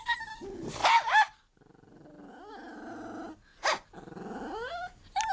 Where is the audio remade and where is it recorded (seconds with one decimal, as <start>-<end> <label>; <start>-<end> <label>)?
0.0-5.3 recorded